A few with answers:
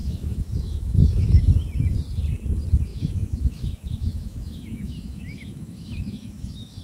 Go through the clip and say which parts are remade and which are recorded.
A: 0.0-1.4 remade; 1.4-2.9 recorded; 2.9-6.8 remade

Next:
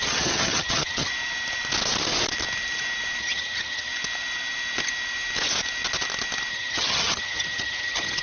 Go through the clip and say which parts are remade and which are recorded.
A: 0.0-1.1 remade; 1.1-3.2 recorded; 3.2-3.9 remade; 3.9-6.5 recorded; 6.5-8.2 remade

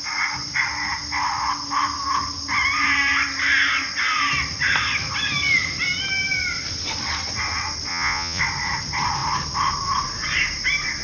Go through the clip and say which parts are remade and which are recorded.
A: 0.0-7.9 recorded; 7.9-8.4 remade; 8.4-11.0 recorded

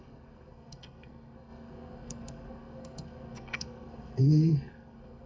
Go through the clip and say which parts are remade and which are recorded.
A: 0.0-5.3 remade